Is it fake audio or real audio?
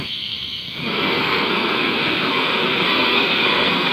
fake